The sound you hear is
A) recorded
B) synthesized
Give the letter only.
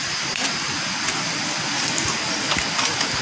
A